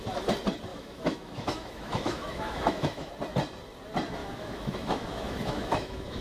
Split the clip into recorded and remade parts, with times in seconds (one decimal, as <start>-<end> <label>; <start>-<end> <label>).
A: 0.0-0.7 recorded; 0.7-3.1 remade; 3.1-4.2 recorded; 4.2-6.2 remade